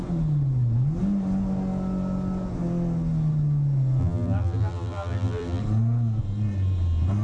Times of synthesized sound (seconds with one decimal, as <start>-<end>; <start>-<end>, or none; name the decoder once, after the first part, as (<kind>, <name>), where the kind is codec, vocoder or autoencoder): 4.0-5.6 (vocoder, BigVGAN v2)